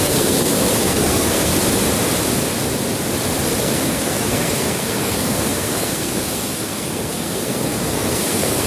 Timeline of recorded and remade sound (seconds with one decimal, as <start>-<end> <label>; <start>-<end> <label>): 0.0-1.5 remade; 1.5-3.6 recorded; 3.6-8.7 remade